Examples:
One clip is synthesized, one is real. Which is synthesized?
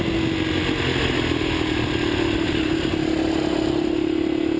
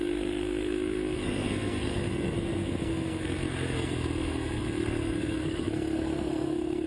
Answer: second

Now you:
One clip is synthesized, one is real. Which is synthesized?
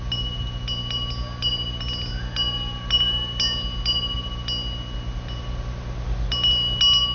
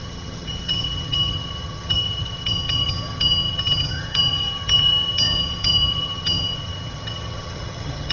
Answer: second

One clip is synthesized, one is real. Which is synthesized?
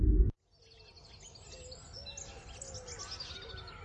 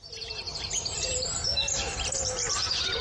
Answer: second